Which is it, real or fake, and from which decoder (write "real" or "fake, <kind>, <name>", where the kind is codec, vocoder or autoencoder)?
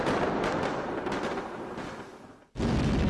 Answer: real